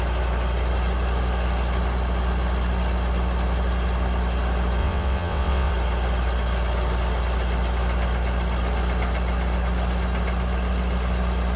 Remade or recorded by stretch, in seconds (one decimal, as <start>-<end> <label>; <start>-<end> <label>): 0.0-4.8 recorded; 4.8-5.7 remade; 5.7-11.6 recorded